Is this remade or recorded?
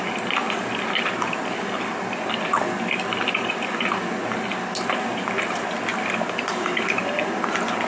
recorded